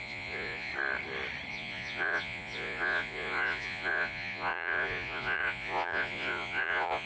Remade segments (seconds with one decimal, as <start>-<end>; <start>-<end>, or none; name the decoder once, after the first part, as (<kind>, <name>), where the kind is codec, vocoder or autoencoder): 0.0-0.7 (vocoder, Vocos); 1.5-7.1